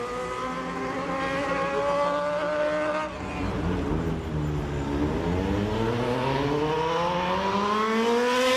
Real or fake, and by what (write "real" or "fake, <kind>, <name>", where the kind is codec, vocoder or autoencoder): real